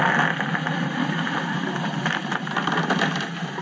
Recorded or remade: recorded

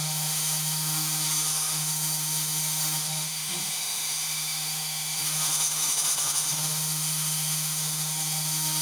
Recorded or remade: remade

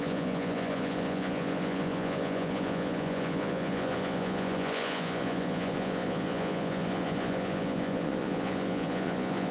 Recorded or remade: remade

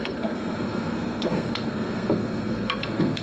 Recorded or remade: remade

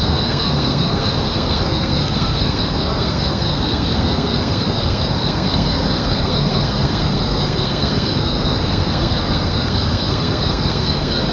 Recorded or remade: remade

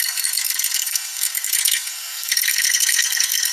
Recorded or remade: remade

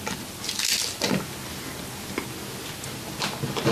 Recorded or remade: recorded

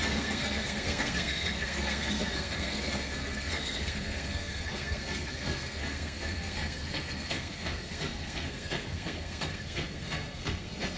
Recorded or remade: remade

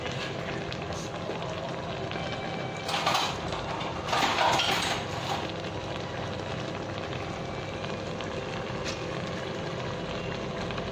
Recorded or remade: recorded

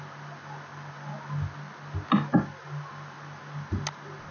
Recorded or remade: recorded